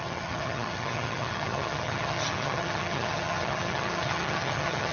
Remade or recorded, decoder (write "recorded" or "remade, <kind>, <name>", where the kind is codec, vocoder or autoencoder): remade, vocoder, HiFi-GAN